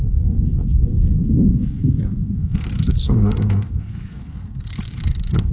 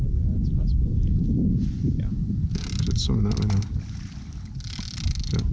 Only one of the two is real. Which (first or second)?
second